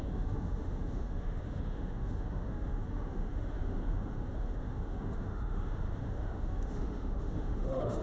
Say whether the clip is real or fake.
fake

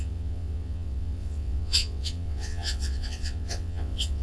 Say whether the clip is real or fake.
fake